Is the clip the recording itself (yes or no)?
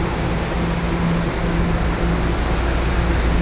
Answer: yes